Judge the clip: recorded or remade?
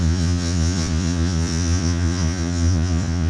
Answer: remade